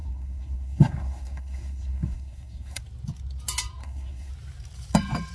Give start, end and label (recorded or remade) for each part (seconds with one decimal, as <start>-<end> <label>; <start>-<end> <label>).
0.0-2.8 remade; 2.8-3.8 recorded; 3.8-4.3 remade; 4.3-5.3 recorded